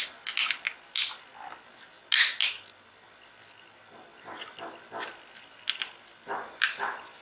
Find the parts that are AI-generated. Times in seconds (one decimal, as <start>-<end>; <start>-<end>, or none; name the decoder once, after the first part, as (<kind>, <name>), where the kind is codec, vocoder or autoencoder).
none